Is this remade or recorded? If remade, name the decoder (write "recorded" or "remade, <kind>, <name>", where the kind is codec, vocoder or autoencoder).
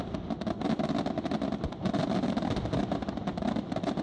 recorded